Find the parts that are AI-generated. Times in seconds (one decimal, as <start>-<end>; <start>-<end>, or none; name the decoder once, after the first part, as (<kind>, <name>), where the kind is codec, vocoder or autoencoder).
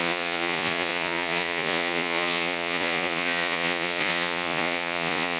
0.0-5.4 (vocoder, Vocos)